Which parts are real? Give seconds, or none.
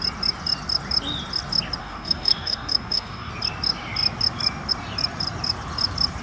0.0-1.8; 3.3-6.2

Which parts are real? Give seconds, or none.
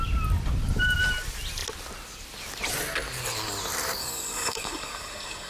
0.0-4.0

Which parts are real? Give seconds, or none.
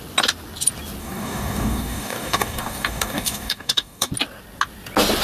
0.0-1.0; 4.1-5.2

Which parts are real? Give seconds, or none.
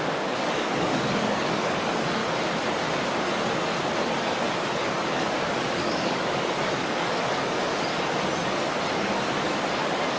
2.2-4.8; 7.7-8.9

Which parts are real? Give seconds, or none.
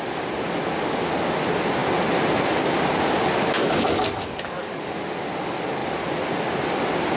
0.0-3.6; 4.9-7.2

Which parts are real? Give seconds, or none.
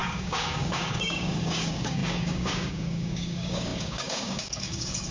none